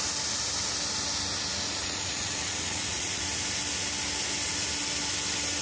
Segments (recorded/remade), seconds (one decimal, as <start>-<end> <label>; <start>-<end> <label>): 0.0-1.5 recorded; 1.5-3.2 remade; 3.2-5.6 recorded